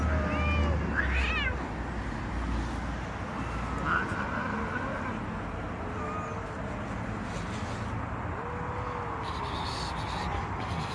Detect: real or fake real